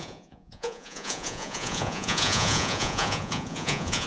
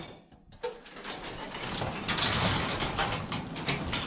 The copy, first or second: first